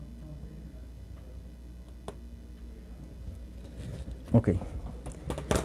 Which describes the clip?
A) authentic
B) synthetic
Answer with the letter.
A